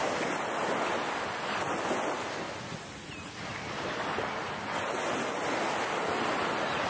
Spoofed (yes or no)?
no